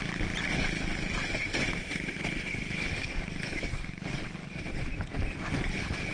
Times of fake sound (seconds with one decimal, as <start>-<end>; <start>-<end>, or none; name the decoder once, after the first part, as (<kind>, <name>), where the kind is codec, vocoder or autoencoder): 2.5-4.6 (codec, DAC)

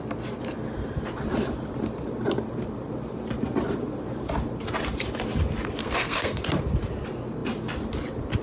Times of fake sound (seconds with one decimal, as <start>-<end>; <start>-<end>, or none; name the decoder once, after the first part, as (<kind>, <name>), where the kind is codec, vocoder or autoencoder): 5.8-6.4 (codec, SNAC)

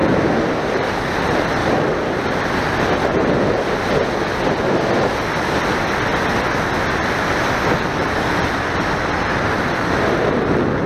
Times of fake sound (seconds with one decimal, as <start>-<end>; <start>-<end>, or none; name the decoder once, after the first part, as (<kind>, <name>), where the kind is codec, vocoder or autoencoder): 0.0-1.2 (vocoder, BigVGAN v2); 1.6-2.2; 6.1-10.2